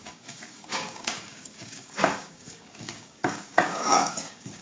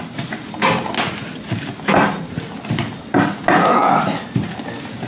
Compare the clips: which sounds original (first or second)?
second